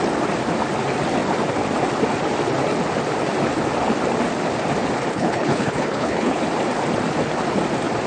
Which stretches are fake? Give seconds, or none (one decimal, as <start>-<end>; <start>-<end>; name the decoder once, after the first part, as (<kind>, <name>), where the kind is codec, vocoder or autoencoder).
5.1-6.4 (codec, HILCodec)